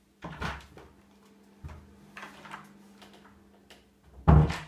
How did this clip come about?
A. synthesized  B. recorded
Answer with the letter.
B